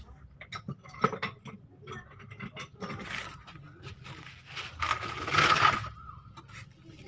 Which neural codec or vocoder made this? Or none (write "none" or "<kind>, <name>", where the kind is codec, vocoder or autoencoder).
none